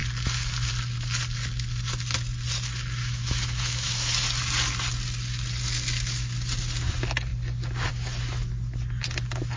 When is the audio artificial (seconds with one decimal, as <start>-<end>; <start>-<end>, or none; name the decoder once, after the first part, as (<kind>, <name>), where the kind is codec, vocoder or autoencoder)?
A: 3.0-4.1 (autoencoder, DAC-VAE)

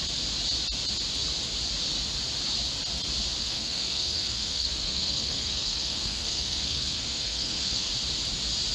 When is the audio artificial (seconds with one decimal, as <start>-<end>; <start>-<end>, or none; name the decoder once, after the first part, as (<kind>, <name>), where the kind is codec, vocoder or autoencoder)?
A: 3.4-7.9 (codec, SNAC)

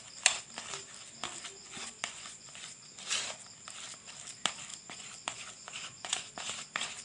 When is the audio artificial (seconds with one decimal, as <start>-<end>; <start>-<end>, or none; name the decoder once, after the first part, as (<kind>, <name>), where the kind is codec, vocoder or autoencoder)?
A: 1.6-2.9 (vocoder, Vocos); 4.7-6.3

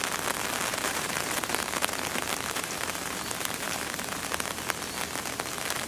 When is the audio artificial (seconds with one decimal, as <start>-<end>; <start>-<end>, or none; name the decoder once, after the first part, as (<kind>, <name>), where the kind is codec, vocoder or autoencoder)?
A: 0.7-4.2 (vocoder, BigVGAN v2)

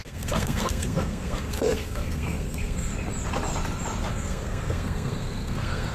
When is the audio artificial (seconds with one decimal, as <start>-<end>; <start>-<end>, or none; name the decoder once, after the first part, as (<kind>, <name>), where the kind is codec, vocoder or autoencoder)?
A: 0.0-2.9 (codec, SNAC); 4.1-5.9

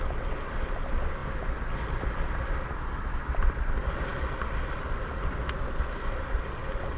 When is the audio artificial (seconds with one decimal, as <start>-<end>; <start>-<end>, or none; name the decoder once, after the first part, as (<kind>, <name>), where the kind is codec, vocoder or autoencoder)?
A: none